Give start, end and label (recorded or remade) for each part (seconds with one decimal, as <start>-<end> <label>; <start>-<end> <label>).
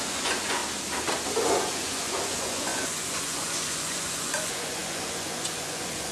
0.0-0.6 remade; 0.6-1.4 recorded; 1.4-6.1 remade